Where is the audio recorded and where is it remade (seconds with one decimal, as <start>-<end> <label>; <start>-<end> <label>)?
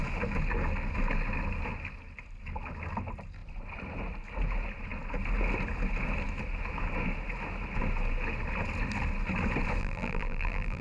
0.0-9.8 recorded; 9.8-10.8 remade